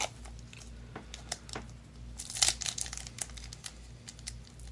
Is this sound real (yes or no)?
yes